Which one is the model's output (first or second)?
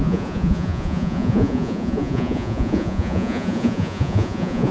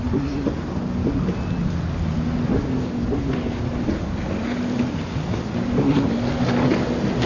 first